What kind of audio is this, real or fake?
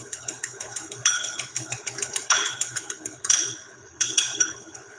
fake